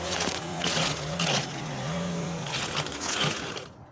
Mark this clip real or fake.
fake